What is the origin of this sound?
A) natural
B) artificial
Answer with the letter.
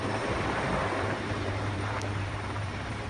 B